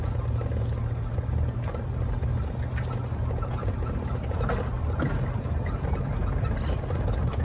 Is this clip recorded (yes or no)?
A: yes